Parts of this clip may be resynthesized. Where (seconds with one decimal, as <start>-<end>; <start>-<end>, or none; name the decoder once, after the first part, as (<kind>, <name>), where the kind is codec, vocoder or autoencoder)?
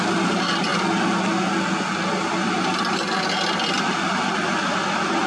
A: none